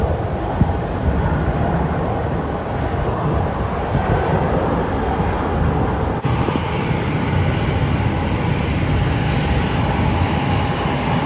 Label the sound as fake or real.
real